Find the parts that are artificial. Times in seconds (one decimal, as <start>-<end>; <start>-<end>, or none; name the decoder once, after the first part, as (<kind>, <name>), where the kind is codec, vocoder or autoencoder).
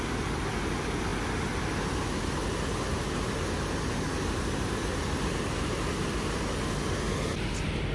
none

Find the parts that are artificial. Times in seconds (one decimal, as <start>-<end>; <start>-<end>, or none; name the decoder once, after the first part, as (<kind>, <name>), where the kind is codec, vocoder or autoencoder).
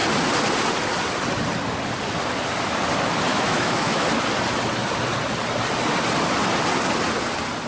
3.3-4.1 (autoencoder, DAC-VAE)